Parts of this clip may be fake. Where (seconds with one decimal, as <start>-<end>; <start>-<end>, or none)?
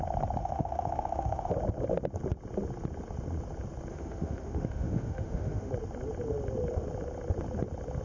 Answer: 0.4-1.5; 3.9-5.7